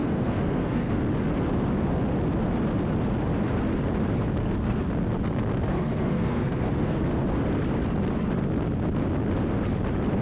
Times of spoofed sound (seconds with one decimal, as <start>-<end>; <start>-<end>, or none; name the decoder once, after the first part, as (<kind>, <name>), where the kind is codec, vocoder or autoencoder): 0.0-1.0 (codec, SNAC); 4.4-4.9; 5.7-7.0